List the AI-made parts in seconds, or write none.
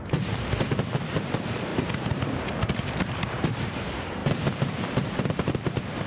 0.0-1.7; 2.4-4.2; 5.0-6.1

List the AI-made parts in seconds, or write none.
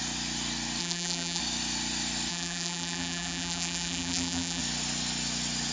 0.8-1.4; 2.3-4.6